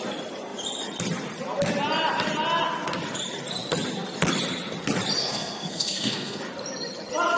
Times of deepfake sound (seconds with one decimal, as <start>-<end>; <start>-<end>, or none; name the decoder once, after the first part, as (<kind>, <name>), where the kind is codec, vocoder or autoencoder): 5.2-6.4 (codec, SNAC)